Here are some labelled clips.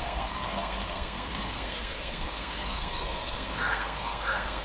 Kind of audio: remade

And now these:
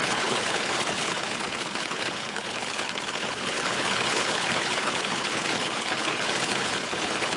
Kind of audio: remade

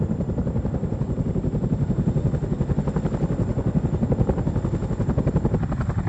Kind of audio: recorded